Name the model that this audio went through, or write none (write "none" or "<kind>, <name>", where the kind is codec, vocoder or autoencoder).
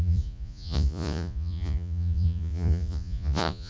vocoder, Vocos